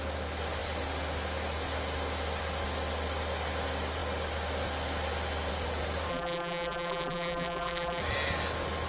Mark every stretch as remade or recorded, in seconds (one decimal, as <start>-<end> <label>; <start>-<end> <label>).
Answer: 0.0-6.1 recorded; 6.1-8.0 remade; 8.0-8.9 recorded